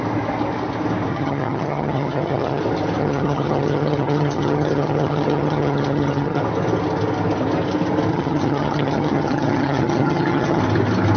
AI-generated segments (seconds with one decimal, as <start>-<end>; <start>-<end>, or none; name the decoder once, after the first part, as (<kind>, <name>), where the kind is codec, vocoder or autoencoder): 1.1-2.6 (vocoder, HiFi-GAN); 3.0-6.4; 8.1-10.6